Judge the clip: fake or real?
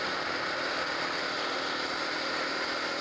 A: real